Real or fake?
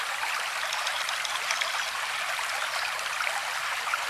real